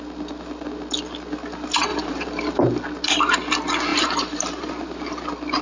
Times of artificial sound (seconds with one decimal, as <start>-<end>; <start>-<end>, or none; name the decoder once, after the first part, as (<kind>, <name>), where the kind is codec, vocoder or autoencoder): 1.9-2.6 (vocoder, BigVGAN v2); 3.9-4.7